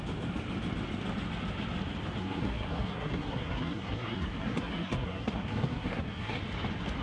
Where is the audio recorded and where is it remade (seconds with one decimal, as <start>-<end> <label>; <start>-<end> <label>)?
0.0-2.2 recorded; 2.2-6.4 remade; 6.4-7.0 recorded